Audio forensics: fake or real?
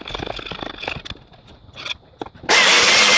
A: real